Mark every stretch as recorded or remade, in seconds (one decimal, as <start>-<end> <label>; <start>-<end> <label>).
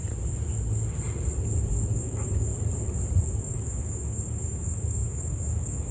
0.0-1.9 recorded; 1.9-2.5 remade; 2.5-3.4 recorded; 3.4-5.9 remade